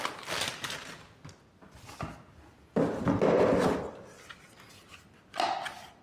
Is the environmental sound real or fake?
real